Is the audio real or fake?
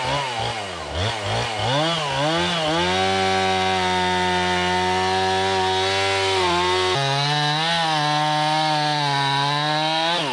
real